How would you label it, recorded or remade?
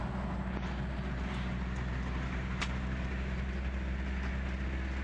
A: recorded